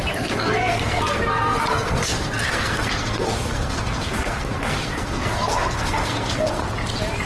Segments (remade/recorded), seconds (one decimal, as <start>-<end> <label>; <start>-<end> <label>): 0.0-6.6 remade; 6.6-7.3 recorded